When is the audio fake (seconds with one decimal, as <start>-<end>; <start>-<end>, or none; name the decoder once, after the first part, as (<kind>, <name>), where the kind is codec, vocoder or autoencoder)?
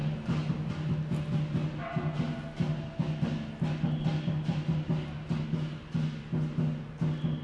none